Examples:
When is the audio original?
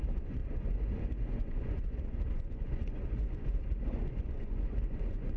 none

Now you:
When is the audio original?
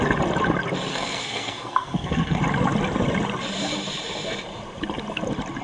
0.0-0.9; 2.4-5.6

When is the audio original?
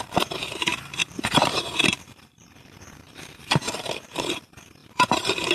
none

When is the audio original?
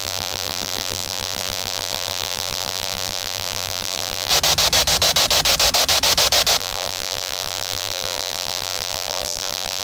4.3-6.6